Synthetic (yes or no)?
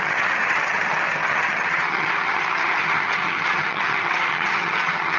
yes